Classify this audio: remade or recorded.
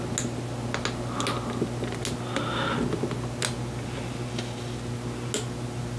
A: recorded